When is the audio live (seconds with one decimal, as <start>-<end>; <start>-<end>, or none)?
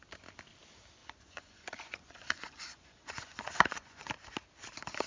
0.0-1.0; 4.1-5.1